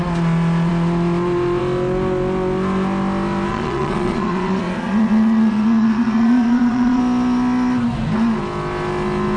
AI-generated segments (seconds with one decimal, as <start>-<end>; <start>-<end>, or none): 3.5-7.0

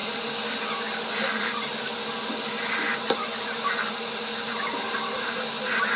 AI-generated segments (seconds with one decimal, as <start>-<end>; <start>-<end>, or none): none

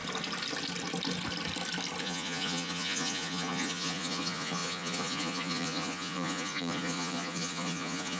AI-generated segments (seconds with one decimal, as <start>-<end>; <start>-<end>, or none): 2.0-8.2

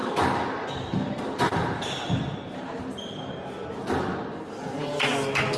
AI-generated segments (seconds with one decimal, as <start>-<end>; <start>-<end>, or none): none

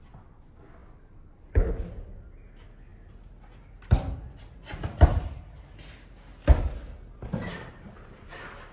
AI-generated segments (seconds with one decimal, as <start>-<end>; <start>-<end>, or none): none